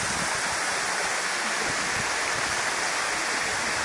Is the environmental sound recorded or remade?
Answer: recorded